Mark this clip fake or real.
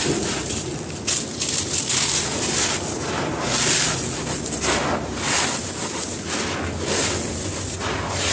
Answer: real